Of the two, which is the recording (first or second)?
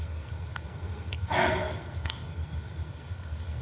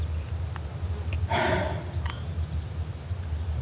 second